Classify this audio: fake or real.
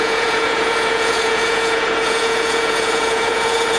fake